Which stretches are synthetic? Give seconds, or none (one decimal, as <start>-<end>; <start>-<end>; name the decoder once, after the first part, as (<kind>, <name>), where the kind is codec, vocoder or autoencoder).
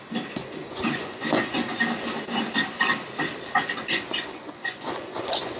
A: 0.4-1.8 (vocoder, Vocos); 3.8-5.6